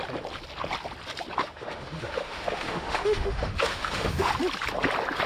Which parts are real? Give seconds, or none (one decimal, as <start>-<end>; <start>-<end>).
0.0-1.4; 4.3-5.3